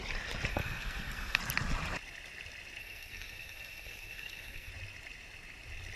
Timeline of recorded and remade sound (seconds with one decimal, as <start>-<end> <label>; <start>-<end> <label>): 0.0-0.5 recorded; 0.5-1.4 remade; 1.4-2.8 recorded; 2.8-4.7 remade; 4.7-6.0 recorded